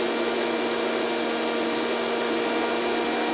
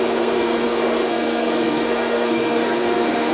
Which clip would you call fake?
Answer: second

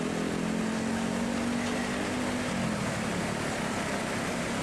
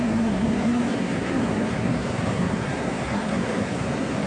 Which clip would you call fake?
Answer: second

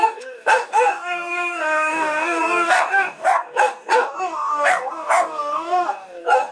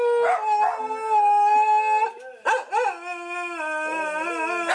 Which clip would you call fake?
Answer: first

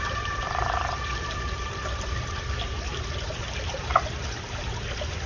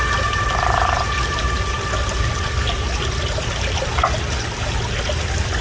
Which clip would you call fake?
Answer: first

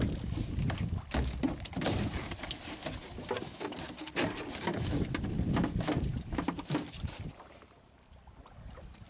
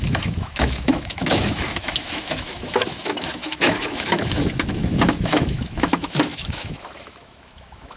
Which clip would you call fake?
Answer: second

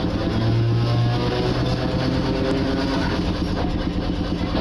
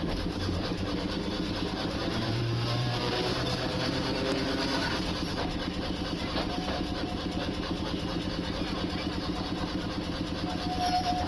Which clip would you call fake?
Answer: second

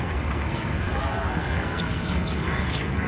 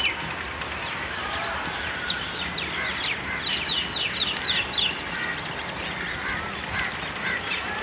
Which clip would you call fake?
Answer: first